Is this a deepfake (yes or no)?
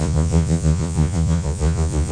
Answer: yes